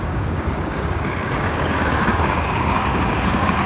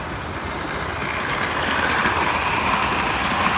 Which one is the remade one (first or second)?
first